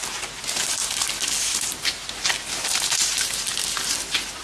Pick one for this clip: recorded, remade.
recorded